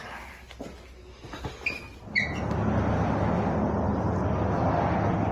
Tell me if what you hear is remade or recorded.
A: recorded